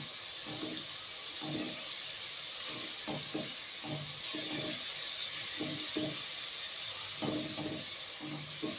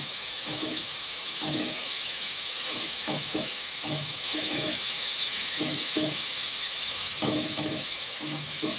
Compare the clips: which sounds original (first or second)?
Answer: first